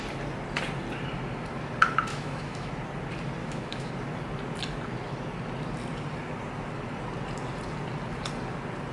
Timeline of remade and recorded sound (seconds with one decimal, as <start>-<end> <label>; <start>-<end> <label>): 0.0-2.1 recorded; 2.1-2.7 remade; 2.7-3.4 recorded; 3.4-3.9 remade; 3.9-8.9 recorded